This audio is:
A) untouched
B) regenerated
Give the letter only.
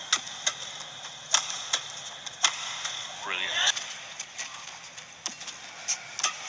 A